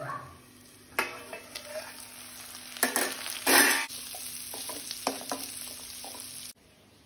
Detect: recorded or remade recorded